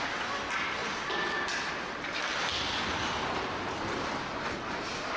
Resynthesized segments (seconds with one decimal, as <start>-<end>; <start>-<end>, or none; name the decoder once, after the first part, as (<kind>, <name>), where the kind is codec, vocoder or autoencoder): none